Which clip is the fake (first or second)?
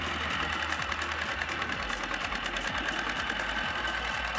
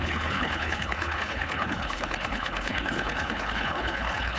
second